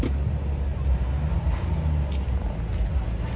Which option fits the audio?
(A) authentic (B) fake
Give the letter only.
A